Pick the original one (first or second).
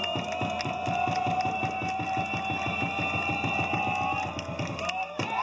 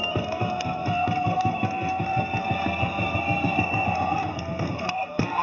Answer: first